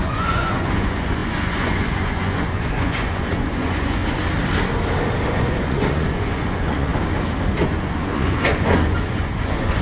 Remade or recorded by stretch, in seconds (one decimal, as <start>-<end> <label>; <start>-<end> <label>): 0.0-4.0 remade; 4.0-5.3 recorded; 5.3-6.9 remade; 6.9-7.6 recorded; 7.6-9.8 remade